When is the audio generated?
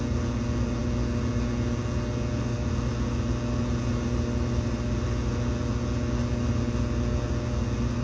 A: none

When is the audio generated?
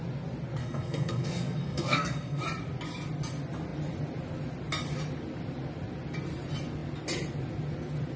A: 0.6-2.4 (codec, SNAC)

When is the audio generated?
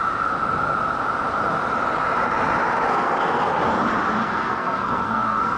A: 2.9-3.5 (codec, SNAC); 4.2-5.6